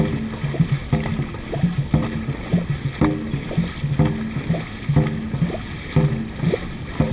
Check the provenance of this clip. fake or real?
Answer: real